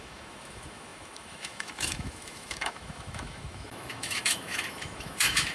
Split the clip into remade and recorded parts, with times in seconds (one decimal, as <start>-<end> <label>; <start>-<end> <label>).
0.0-5.5 remade

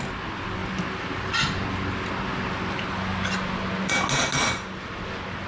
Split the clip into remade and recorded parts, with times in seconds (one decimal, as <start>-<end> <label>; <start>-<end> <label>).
0.0-5.5 recorded